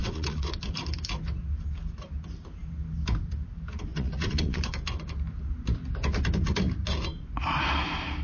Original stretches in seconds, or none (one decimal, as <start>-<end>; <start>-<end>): 0.5-3.9; 4.6-8.2